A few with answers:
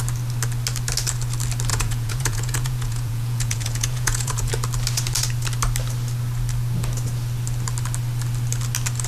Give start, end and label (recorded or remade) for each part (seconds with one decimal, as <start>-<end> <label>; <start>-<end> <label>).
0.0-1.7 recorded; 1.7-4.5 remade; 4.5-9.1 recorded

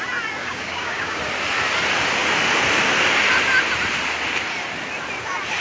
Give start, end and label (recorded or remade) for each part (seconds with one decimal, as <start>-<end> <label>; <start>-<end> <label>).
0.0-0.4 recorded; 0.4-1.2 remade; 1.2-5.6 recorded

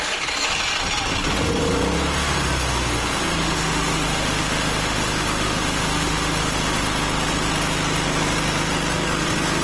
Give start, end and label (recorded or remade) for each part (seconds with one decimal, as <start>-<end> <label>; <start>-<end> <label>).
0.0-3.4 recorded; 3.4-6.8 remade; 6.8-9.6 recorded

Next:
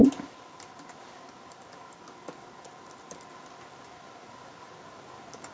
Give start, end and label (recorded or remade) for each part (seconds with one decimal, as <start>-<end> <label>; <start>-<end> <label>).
0.0-5.5 recorded